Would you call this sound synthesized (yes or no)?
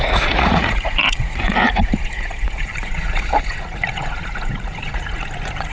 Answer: yes